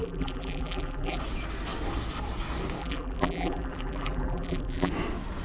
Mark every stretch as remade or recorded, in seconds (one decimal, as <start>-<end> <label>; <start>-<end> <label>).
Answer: 0.0-1.2 remade; 1.2-2.8 recorded; 2.8-4.9 remade; 4.9-5.4 recorded